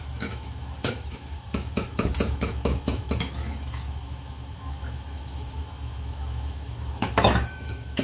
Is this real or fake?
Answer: fake